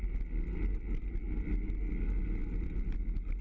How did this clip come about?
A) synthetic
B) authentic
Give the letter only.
B